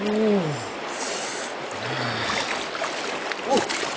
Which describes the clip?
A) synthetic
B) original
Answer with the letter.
B